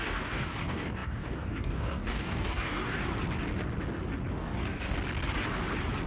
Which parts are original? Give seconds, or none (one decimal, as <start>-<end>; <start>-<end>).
3.0-4.3; 4.9-6.1